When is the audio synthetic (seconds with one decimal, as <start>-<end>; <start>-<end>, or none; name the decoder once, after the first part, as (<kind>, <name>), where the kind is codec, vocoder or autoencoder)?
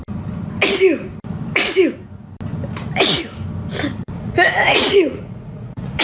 3.9-6.0 (vocoder, Vocos)